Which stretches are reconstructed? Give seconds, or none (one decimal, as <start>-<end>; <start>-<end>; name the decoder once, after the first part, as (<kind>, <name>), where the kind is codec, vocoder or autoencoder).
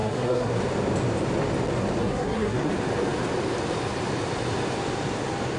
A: 0.0-0.5 (codec, SNAC); 2.0-2.7